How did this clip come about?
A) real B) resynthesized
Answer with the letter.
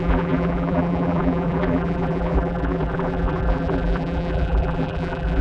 B